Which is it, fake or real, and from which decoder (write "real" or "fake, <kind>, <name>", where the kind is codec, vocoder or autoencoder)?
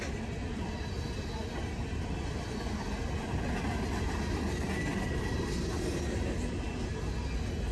real